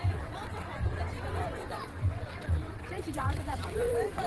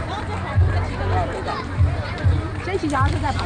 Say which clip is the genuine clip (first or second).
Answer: second